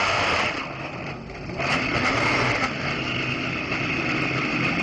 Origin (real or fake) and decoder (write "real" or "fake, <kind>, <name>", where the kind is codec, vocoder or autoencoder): real